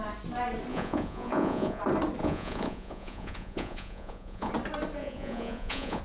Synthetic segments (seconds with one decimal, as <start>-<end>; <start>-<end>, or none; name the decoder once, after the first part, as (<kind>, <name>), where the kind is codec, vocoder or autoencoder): 0.7-1.8 (vocoder, Vocos); 2.2-4.5; 5.0-6.0